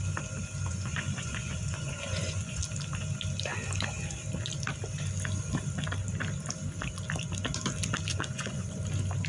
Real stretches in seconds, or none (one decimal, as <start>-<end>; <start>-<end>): 0.0-0.7; 2.6-8.1; 8.7-9.3